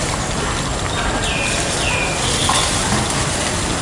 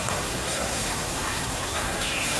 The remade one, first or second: second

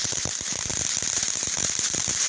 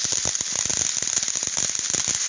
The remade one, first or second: first